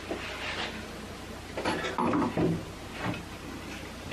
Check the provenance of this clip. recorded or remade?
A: recorded